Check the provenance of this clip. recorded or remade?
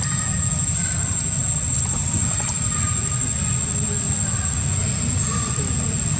recorded